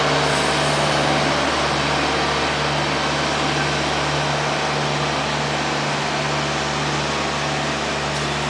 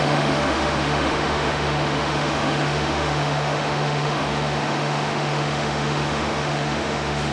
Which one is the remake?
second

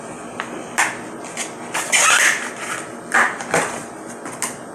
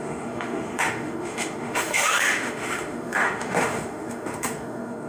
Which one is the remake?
second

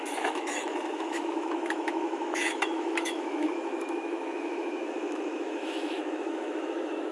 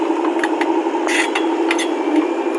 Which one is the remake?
first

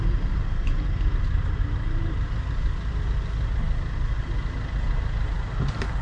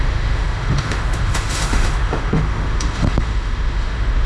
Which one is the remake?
second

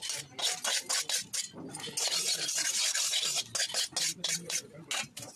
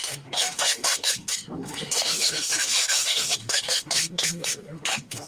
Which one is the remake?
second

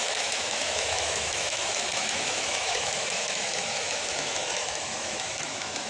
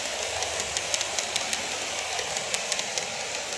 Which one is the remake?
first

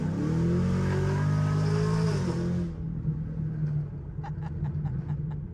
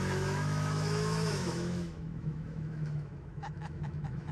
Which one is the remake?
second